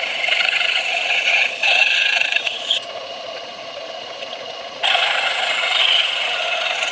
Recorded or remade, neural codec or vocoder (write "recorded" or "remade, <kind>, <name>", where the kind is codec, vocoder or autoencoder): remade, vocoder, Vocos